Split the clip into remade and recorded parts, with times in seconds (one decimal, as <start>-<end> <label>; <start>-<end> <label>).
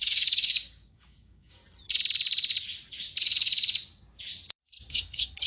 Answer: 0.0-1.6 remade; 1.6-4.9 recorded; 4.9-5.5 remade